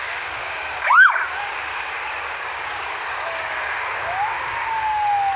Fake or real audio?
fake